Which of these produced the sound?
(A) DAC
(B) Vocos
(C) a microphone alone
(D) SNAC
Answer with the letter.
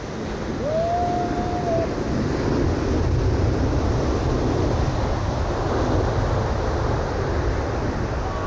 C